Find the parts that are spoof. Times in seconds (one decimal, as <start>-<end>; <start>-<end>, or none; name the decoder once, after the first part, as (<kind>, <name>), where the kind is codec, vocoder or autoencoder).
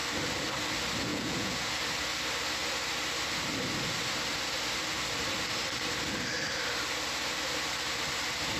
1.1-1.7 (vocoder, Vocos)